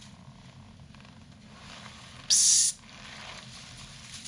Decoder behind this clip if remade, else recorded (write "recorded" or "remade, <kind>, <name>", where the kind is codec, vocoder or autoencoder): recorded